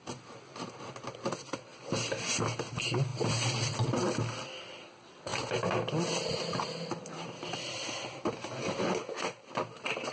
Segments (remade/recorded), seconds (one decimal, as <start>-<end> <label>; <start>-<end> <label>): 0.0-10.1 recorded